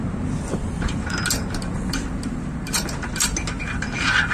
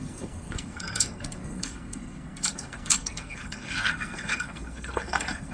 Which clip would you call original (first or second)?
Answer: first